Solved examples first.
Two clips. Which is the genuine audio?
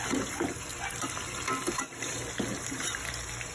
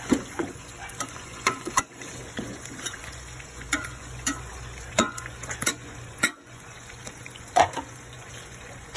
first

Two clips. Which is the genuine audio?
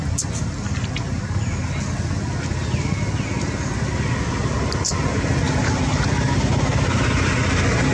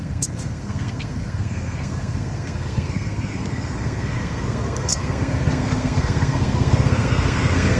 first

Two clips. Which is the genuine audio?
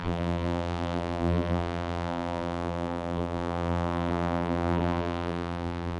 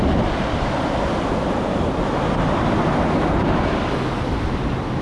second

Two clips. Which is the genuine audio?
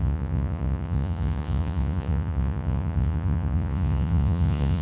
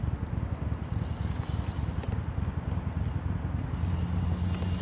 second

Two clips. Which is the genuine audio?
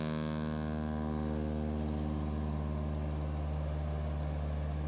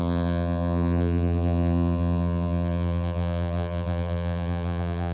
first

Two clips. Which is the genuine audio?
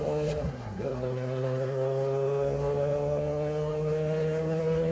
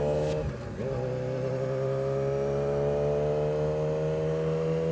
second